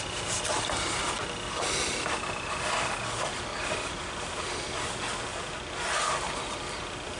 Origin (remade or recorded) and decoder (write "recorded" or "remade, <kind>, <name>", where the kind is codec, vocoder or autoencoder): recorded